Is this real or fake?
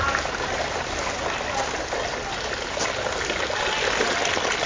real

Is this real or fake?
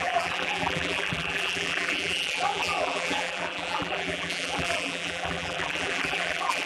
fake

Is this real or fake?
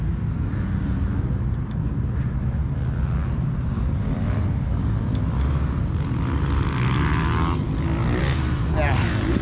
real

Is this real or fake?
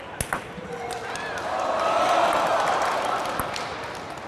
real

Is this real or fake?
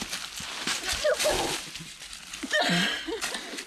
real